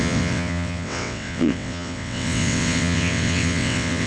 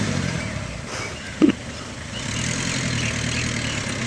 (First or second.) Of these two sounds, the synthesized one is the first